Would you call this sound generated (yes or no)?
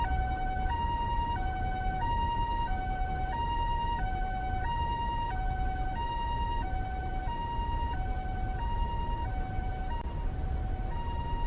no